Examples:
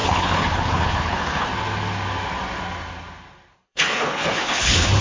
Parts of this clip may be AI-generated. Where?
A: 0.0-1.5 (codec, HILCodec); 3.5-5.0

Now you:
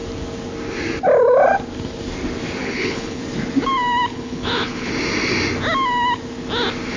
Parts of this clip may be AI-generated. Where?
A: 2.6-3.2 (codec, HILCodec); 4.1-4.9

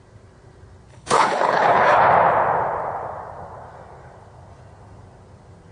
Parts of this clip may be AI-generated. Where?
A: 0.9-2.0 (codec, HILCodec)

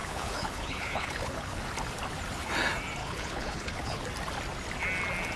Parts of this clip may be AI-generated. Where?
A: 0.0-1.6 (codec, HILCodec); 3.0-4.0

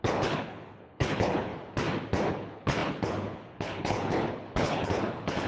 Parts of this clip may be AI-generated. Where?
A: 0.0-1.5 (codec, HILCodec); 2.3-5.5

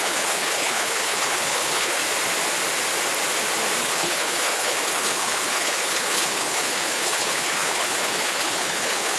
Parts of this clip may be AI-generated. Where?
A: 0.0-2.0 (codec, HILCodec); 3.8-9.2

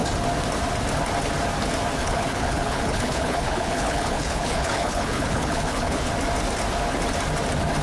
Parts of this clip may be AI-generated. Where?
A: 2.0-6.1 (codec, HILCodec)

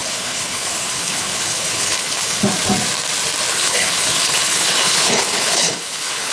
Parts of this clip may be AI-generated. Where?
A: 0.0-2.4 (codec, HILCodec); 3.5-6.3